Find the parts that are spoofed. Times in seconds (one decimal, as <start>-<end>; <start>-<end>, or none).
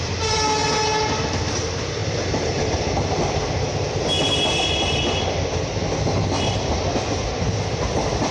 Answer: none